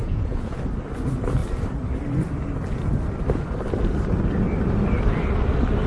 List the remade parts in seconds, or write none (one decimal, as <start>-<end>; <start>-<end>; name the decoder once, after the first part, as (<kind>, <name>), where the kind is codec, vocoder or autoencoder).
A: 0.0-0.6 (vocoder, Vocos)